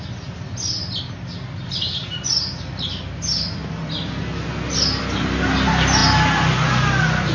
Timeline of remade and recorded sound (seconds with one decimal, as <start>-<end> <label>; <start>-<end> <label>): 0.0-7.3 recorded